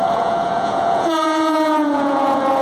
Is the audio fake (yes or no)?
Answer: yes